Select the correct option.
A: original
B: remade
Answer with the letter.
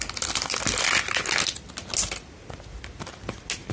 A